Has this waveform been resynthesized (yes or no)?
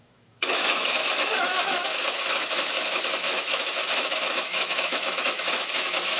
yes